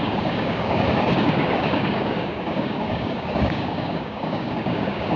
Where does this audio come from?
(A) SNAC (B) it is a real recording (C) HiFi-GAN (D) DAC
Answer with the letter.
D